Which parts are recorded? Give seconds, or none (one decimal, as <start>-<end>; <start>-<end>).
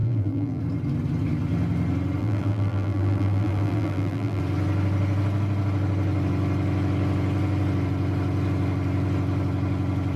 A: 0.6-2.2; 4.4-10.2